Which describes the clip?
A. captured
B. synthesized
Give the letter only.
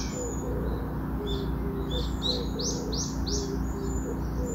A